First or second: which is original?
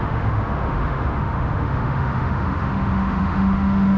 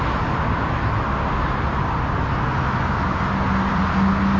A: second